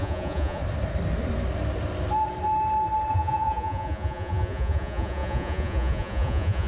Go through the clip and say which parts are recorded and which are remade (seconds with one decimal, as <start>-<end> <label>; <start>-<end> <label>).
0.0-0.6 remade; 0.6-3.1 recorded; 3.1-6.7 remade